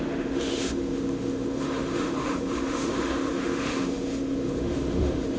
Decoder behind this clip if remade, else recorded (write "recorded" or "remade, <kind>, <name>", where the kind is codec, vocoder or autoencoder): remade, autoencoder, DAC-VAE